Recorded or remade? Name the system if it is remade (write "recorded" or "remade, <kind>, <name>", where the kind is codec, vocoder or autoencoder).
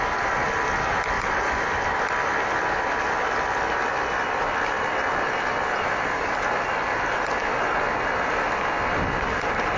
recorded